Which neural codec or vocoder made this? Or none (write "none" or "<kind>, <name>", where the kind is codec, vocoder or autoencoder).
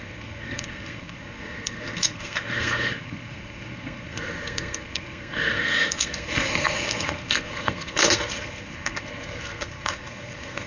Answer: codec, SNAC